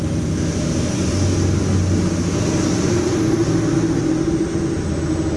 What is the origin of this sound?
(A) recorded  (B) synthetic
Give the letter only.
A